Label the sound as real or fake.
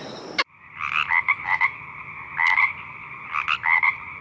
real